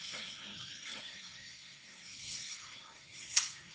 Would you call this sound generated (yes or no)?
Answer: yes